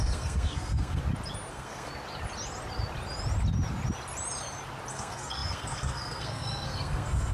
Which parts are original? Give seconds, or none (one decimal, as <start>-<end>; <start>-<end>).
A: 1.0-1.5; 1.9-4.9